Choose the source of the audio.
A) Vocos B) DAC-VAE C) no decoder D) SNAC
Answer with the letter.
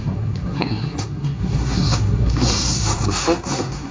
D